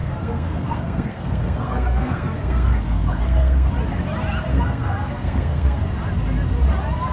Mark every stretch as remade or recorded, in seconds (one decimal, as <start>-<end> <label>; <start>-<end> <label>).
0.0-3.7 remade; 3.7-4.5 recorded; 4.5-5.8 remade; 5.8-7.1 recorded